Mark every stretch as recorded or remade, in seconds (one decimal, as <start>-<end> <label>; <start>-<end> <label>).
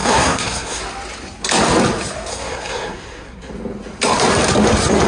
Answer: 0.0-0.8 remade; 0.8-2.3 recorded; 2.3-3.5 remade; 3.5-5.1 recorded